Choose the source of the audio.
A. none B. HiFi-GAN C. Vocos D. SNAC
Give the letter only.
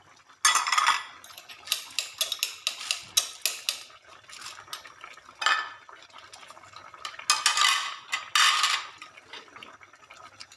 A